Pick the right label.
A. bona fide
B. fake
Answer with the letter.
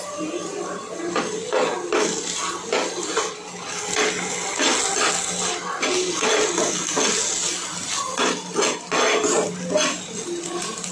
A